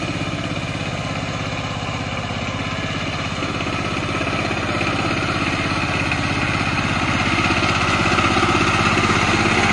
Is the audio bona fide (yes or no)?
yes